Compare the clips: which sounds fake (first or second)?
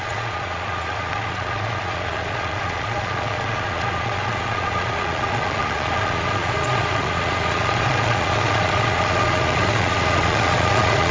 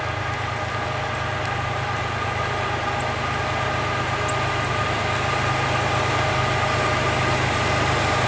first